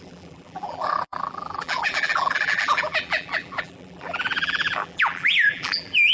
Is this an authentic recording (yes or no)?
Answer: no